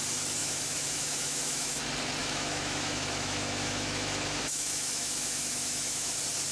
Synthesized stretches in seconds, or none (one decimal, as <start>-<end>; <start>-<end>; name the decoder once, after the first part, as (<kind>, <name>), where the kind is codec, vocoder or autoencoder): 0.4-1.8 (autoencoder, DAC-VAE); 2.2-6.1